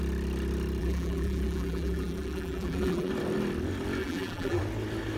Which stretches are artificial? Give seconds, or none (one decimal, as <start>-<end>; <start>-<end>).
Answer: 0.8-3.1; 4.0-4.6

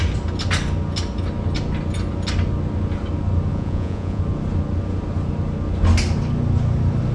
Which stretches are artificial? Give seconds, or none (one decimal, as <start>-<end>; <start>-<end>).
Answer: 3.5-4.2